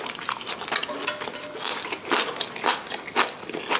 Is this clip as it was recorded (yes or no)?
yes